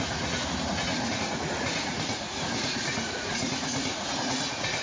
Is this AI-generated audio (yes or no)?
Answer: yes